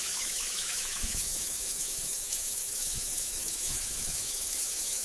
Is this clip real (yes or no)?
no